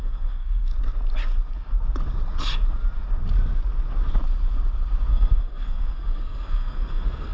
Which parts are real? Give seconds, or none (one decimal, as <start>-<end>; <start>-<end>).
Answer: 0.7-5.1